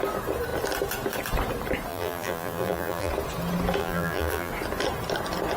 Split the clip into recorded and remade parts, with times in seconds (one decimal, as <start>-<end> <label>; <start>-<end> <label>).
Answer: 0.0-1.9 recorded; 1.9-3.1 remade; 3.1-3.8 recorded; 3.8-4.5 remade; 4.5-5.6 recorded

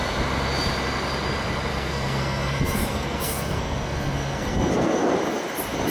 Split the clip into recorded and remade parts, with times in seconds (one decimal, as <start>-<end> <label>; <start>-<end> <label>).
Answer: 0.0-1.7 recorded; 1.7-5.1 remade; 5.1-5.9 recorded

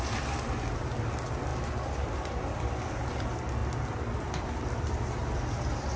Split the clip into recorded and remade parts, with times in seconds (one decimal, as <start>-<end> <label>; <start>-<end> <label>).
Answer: 0.0-6.0 recorded

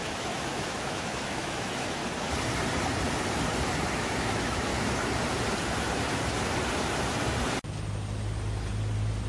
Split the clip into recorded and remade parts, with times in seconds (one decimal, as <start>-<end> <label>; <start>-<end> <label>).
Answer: 0.0-2.0 remade; 2.0-3.9 recorded; 3.9-4.7 remade; 4.7-9.3 recorded

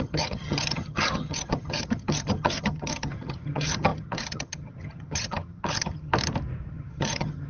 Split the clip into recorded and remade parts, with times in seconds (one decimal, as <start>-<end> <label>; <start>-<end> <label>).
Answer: 0.0-6.1 remade; 6.1-6.7 recorded; 6.7-7.5 remade

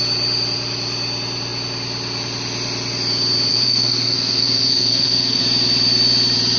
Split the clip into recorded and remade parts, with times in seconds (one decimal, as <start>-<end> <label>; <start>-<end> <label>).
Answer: 0.0-3.5 recorded; 3.5-5.4 remade; 5.4-6.6 recorded